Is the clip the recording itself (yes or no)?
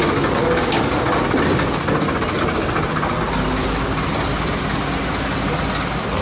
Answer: yes